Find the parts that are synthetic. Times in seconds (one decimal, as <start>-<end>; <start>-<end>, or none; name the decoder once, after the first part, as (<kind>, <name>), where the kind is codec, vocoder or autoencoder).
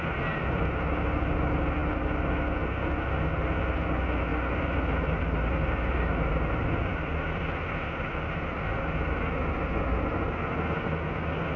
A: 4.3-8.8 (vocoder, BigVGAN v2)